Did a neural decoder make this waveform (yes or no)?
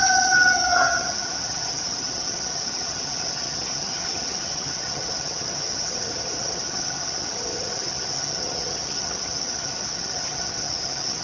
yes